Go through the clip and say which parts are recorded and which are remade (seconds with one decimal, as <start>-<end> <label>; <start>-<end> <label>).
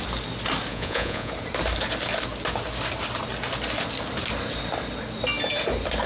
0.0-0.7 recorded; 0.7-1.3 remade; 1.3-6.1 recorded